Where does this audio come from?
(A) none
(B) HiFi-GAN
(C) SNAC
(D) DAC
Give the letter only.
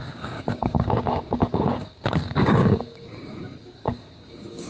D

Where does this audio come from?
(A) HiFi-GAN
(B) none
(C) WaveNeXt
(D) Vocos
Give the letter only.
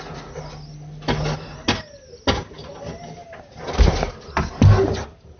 B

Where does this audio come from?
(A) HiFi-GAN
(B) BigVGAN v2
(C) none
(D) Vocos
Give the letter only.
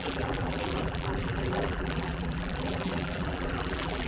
B